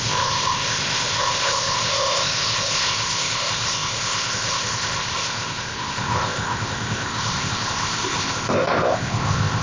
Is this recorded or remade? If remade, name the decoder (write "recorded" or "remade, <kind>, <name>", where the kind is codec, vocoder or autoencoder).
remade, codec, ZipCodec